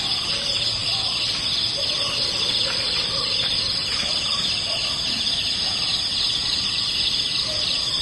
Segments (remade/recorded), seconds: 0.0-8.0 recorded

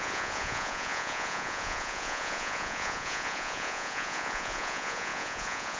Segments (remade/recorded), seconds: 0.0-5.8 remade

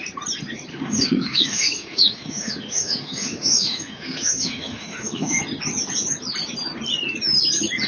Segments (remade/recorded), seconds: 0.0-0.7 recorded; 0.7-5.4 remade; 5.4-7.9 recorded

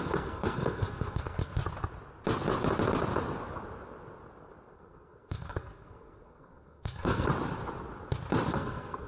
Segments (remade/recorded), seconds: 0.0-1.6 remade; 1.6-4.7 recorded; 4.7-7.3 remade; 7.3-8.5 recorded; 8.5-9.1 remade